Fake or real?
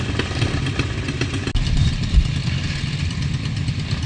real